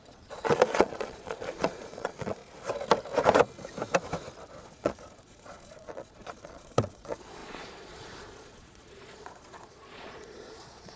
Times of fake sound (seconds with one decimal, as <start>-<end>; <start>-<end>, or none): 0.0-2.4; 4.6-11.0